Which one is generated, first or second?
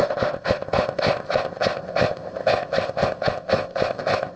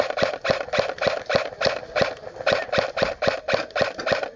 first